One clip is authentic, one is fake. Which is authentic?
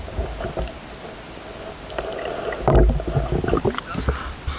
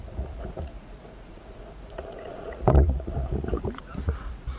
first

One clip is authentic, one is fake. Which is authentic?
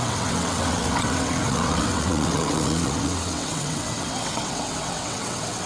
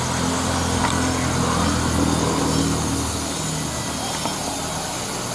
second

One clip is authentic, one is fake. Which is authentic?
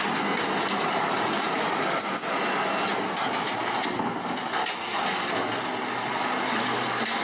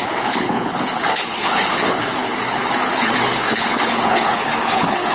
first